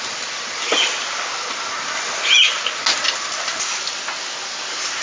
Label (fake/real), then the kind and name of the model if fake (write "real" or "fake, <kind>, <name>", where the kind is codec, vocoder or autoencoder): real